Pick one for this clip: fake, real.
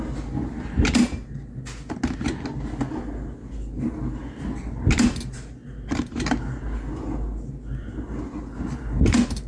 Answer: real